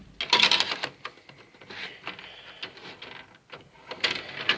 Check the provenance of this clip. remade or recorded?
recorded